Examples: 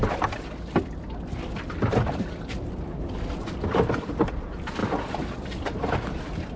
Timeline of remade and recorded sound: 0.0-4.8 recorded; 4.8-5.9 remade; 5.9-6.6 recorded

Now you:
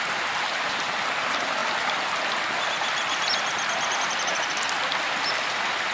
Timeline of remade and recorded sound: 0.0-5.9 recorded

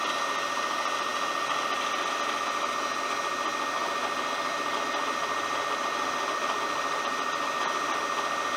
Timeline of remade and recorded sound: 0.0-3.8 recorded; 3.8-7.6 remade; 7.6-8.6 recorded

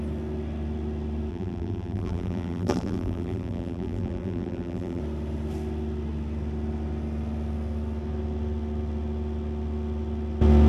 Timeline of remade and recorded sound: 0.0-1.3 recorded; 1.3-5.0 remade; 5.0-10.7 recorded

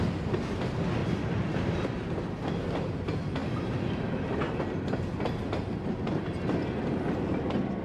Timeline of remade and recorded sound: 0.0-1.0 recorded; 1.0-2.1 remade; 2.1-7.8 recorded

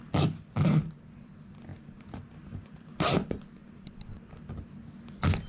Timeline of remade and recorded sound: 0.0-1.7 recorded; 1.7-2.9 remade; 2.9-5.5 recorded

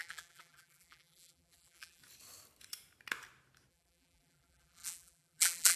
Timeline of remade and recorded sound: 0.0-2.0 remade; 2.0-3.7 recorded; 3.7-5.8 remade